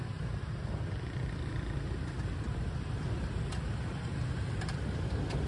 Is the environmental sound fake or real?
real